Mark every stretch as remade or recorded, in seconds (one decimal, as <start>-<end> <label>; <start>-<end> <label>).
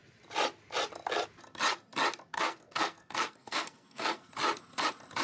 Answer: 0.0-2.3 recorded; 2.3-4.3 remade; 4.3-5.2 recorded